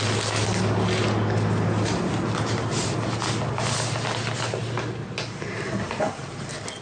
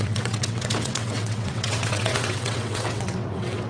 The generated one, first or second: second